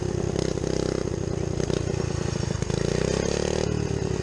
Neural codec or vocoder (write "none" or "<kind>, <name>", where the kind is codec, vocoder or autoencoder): none